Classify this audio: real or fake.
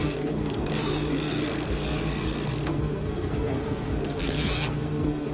fake